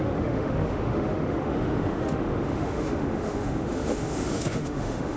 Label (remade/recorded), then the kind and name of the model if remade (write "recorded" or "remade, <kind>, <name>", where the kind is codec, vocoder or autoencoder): remade, autoencoder, DAC-VAE